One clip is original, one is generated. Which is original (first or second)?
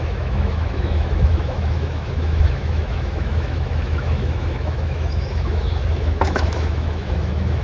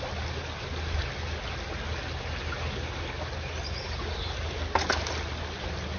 second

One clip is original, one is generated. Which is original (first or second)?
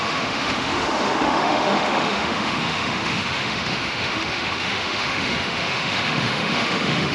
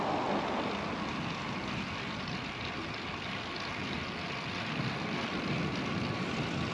second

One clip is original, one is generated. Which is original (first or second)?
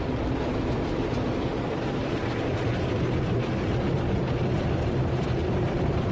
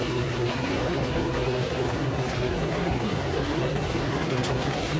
first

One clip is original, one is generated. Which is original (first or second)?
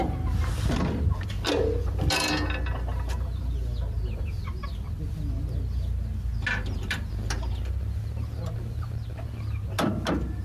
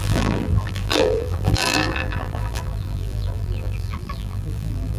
first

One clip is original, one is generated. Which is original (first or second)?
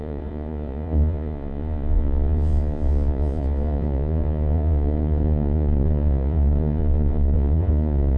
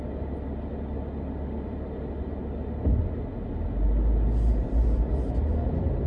second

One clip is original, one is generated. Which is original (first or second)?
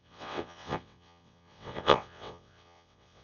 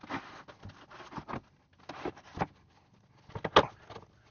second